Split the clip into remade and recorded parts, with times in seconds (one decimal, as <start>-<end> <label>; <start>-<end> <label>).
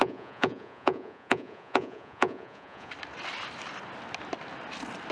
0.0-2.9 remade; 2.9-5.1 recorded